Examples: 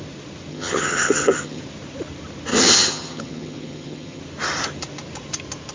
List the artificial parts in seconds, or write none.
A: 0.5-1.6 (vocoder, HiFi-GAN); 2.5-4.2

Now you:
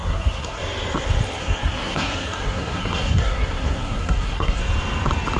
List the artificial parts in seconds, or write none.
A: 0.0-0.6 (codec, SNAC); 1.4-4.6